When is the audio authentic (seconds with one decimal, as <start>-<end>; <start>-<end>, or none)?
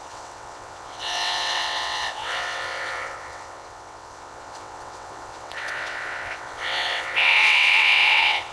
none